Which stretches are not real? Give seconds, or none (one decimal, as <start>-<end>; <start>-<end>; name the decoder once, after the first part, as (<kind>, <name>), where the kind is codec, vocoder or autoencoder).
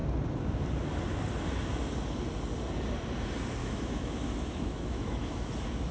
3.6-5.5 (autoencoder, DAC-VAE)